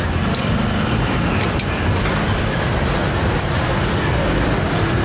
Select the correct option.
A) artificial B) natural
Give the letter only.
B